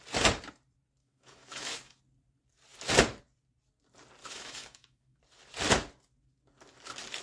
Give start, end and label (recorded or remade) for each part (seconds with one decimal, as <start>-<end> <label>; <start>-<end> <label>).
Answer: 0.0-1.0 recorded; 1.0-2.0 remade; 2.0-4.2 recorded; 4.2-5.2 remade; 5.2-7.2 recorded